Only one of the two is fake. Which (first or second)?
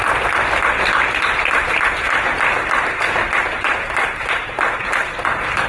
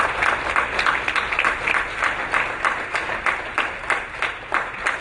first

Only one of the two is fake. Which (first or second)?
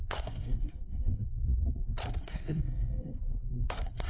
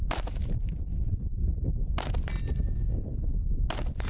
first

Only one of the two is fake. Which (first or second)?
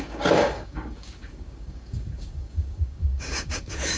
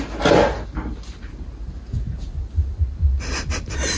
first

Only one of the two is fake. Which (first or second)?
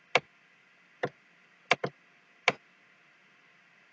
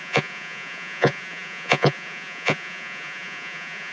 second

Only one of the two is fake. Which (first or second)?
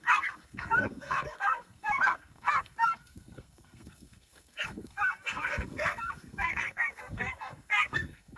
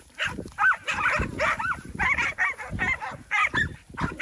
first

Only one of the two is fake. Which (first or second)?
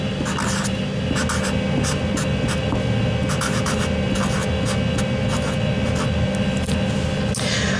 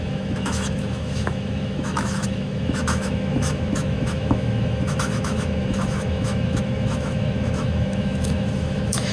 second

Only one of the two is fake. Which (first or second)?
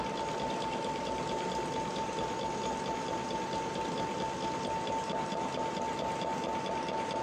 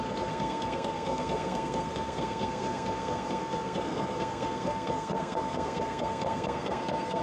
second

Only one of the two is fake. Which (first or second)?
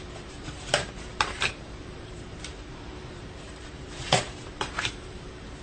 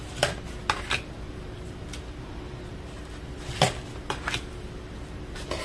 first